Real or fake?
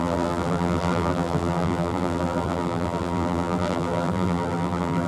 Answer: fake